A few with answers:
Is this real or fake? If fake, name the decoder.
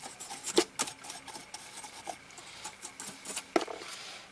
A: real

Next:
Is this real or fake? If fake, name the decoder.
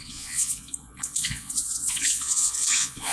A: fake, vocoder, Vocos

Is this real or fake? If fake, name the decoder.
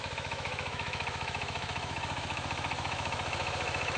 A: fake, autoencoder, DAC-VAE